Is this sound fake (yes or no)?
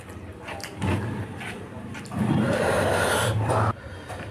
yes